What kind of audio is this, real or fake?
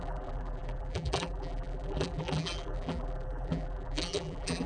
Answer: fake